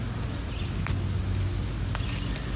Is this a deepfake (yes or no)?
no